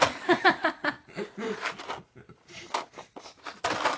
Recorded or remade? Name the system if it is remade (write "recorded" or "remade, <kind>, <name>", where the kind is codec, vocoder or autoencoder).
recorded